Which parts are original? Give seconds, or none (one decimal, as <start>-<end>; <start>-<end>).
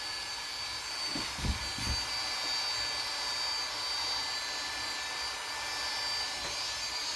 0.0-7.2